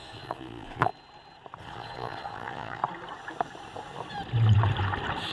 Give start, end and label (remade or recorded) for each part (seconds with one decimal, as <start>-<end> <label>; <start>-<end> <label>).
0.0-0.9 remade; 0.9-1.6 recorded; 1.6-2.8 remade; 2.8-5.3 recorded